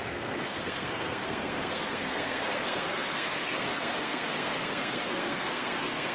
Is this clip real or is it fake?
fake